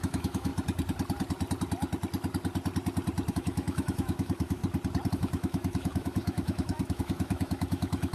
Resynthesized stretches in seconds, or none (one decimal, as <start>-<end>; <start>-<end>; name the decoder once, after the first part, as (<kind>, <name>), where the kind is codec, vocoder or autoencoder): 0.0-0.5 (autoencoder, DAC-VAE); 3.3-4.6; 5.1-8.1